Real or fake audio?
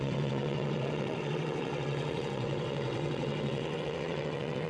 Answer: fake